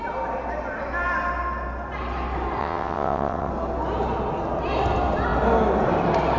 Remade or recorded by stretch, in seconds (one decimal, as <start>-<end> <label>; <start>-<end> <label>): 0.0-2.6 recorded; 2.6-3.5 remade; 3.5-6.4 recorded